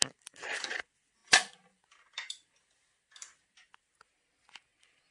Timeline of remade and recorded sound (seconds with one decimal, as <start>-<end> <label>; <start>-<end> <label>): 0.0-5.1 recorded